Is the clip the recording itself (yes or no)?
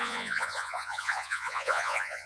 no